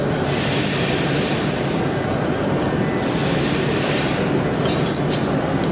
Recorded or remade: recorded